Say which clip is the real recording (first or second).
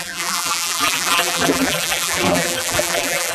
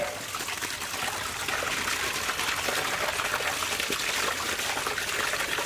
second